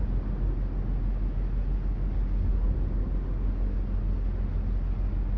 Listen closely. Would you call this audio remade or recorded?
recorded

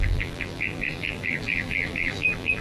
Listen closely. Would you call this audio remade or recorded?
remade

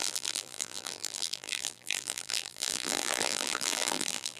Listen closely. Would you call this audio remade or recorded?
remade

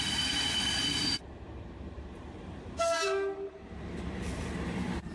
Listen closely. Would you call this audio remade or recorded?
remade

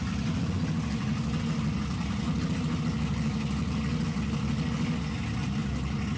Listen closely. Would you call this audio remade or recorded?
recorded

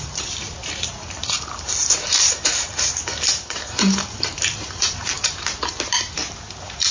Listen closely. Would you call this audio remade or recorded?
remade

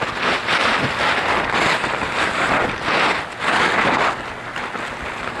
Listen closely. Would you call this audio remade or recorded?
recorded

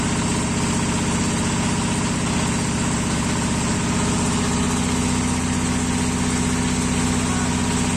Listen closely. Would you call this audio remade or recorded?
recorded